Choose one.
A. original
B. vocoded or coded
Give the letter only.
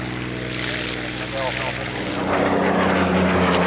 A